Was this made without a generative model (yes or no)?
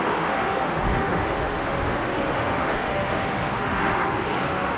no